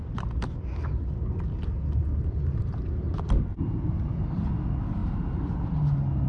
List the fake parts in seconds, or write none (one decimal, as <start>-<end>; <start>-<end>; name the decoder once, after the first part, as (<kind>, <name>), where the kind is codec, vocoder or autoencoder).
5.0-5.7 (vocoder, BigVGAN v2)